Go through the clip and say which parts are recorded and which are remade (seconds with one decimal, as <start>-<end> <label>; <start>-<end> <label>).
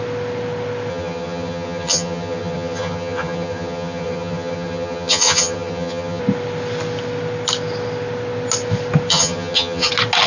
0.0-0.9 recorded; 0.9-6.2 remade; 6.2-9.1 recorded; 9.1-9.9 remade; 9.9-10.3 recorded